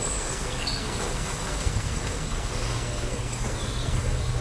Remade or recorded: remade